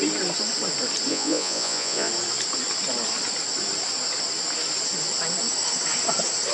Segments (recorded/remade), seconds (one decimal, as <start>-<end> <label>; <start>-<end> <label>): 0.0-1.1 recorded; 1.1-2.1 remade; 2.1-6.5 recorded